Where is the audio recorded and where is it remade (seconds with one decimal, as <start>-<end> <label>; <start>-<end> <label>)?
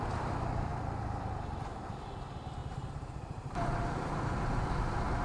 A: 0.0-0.7 recorded; 0.7-1.3 remade; 1.3-2.6 recorded; 2.6-4.7 remade; 4.7-5.2 recorded